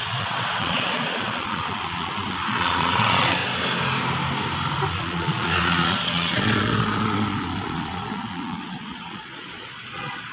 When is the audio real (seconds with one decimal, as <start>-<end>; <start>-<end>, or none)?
3.4-4.9